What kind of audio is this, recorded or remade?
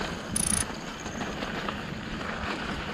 recorded